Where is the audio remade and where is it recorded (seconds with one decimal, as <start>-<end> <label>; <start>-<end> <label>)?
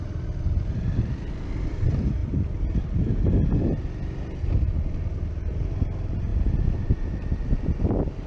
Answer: 0.0-2.2 remade; 2.2-5.7 recorded; 5.7-6.3 remade; 6.3-7.1 recorded; 7.1-8.3 remade